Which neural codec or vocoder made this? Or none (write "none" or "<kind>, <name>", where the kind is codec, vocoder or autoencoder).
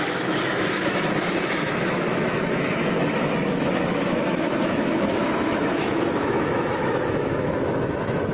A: autoencoder, DAC-VAE